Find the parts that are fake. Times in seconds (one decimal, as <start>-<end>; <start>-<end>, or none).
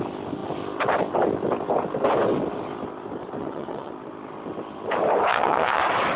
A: 3.4-3.9; 5.3-5.8